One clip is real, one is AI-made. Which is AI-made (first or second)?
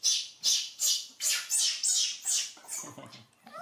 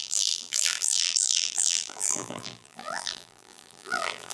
second